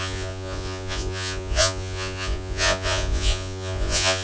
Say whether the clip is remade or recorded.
remade